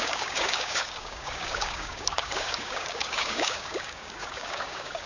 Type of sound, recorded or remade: remade